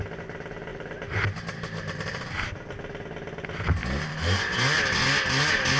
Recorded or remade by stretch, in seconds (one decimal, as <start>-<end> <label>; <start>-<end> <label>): 0.0-0.7 recorded; 0.7-2.3 remade; 2.3-3.8 recorded; 3.8-4.8 remade; 4.8-5.8 recorded